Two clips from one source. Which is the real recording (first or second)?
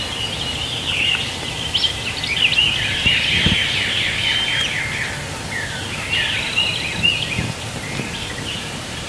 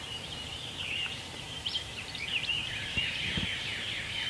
first